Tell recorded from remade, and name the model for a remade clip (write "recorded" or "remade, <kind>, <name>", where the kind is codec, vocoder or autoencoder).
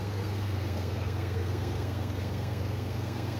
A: remade, codec, SNAC